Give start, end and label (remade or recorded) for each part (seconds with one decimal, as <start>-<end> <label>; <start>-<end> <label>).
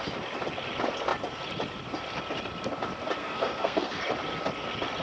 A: 0.0-3.2 recorded; 3.2-4.0 remade; 4.0-5.0 recorded